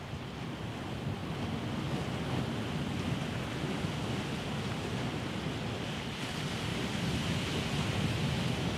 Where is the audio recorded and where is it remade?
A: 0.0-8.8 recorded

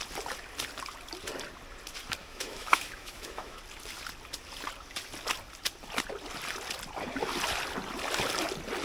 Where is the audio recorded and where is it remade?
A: 0.0-2.2 recorded; 2.2-3.6 remade; 3.6-8.8 recorded

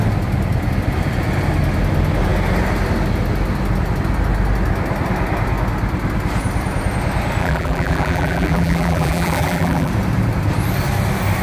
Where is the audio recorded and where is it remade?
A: 0.0-7.4 recorded; 7.4-9.9 remade; 9.9-11.4 recorded

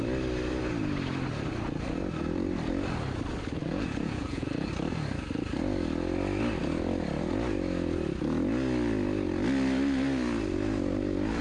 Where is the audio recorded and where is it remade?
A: 0.0-3.6 recorded; 3.6-4.7 remade; 4.7-11.4 recorded

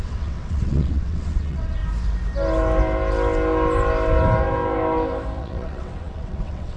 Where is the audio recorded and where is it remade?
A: 0.0-1.8 remade; 1.8-5.4 recorded; 5.4-6.8 remade

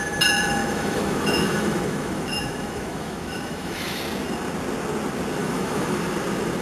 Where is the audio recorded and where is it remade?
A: 0.0-0.6 recorded; 0.6-4.0 remade; 4.0-5.4 recorded; 5.4-6.0 remade; 6.0-6.6 recorded

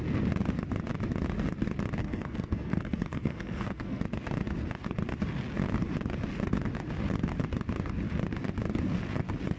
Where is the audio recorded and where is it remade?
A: 0.0-2.0 recorded; 2.0-4.0 remade; 4.0-9.6 recorded